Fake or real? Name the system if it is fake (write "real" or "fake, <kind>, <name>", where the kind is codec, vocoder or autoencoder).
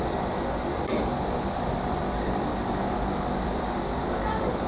real